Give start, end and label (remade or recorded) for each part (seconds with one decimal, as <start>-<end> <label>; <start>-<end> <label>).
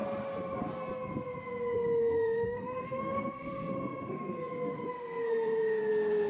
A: 0.0-2.0 recorded; 2.0-5.8 remade; 5.8-6.3 recorded